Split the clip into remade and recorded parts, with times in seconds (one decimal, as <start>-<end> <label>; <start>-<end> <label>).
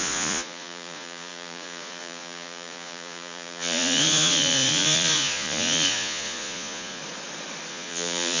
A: 0.0-7.0 remade; 7.0-7.7 recorded; 7.7-8.4 remade